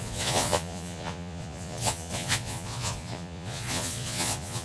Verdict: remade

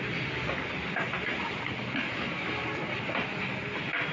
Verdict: recorded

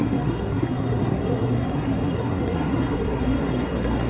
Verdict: remade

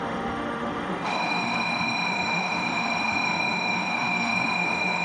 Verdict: remade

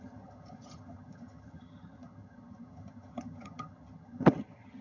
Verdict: remade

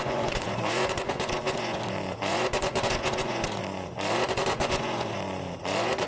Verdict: remade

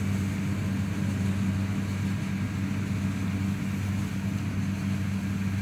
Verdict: recorded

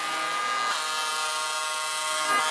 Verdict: recorded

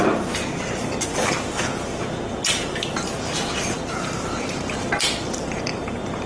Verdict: remade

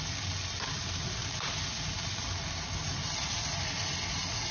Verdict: recorded